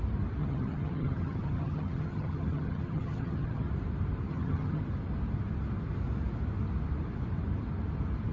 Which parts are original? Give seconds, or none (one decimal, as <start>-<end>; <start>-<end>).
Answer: 0.0-0.4; 3.7-4.3; 4.8-8.3